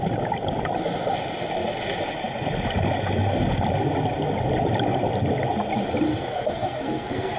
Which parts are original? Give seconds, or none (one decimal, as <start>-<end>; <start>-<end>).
0.0-6.1